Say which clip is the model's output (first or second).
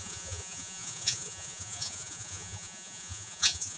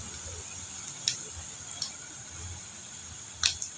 first